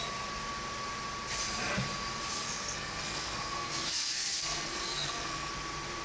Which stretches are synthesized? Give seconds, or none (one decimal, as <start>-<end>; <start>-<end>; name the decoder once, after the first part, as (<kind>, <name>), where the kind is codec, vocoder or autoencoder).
2.3-5.5 (codec, SNAC)